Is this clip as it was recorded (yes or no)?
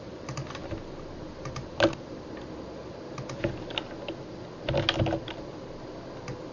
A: yes